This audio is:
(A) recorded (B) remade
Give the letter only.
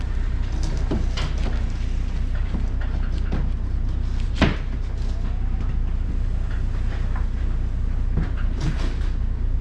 A